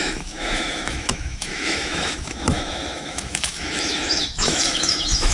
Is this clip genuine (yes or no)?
no